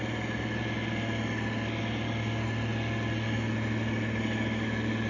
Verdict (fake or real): real